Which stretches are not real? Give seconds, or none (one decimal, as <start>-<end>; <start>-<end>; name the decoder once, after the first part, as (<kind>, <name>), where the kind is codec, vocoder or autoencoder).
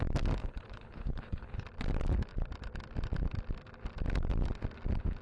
0.4-1.6 (codec, HILCodec)